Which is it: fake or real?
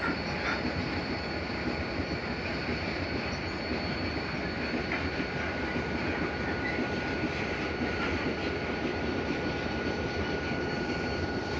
real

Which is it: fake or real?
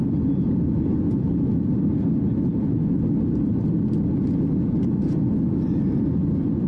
real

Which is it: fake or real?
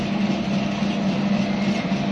real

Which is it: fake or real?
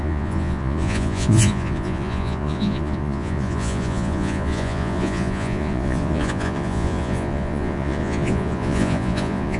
fake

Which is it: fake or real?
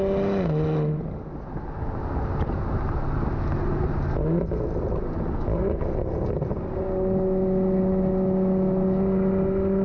real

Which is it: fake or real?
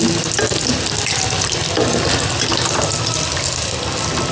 real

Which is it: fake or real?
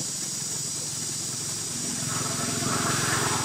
real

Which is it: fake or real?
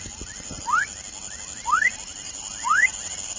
real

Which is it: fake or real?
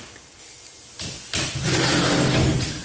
real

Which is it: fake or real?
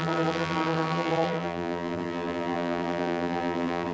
fake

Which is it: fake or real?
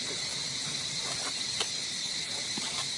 real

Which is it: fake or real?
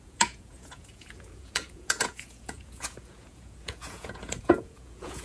fake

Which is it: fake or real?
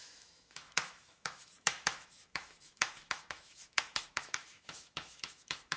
fake